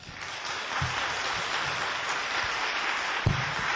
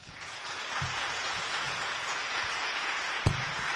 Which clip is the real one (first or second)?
first